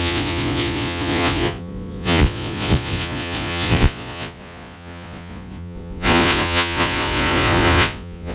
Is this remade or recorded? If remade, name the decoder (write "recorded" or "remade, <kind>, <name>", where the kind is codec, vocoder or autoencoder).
remade, vocoder, Vocos